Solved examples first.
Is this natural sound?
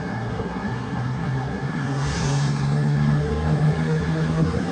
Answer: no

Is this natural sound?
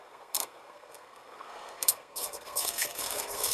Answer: no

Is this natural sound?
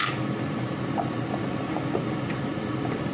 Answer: yes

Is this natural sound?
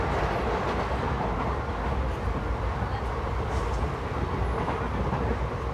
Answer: yes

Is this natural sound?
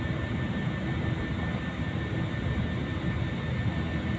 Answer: yes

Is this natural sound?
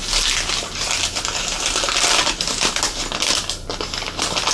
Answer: yes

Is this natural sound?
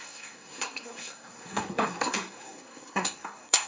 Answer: no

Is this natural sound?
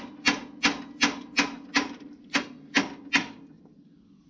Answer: yes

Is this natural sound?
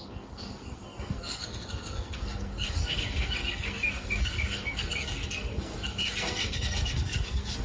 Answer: no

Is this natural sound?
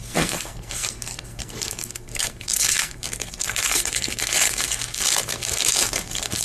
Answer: no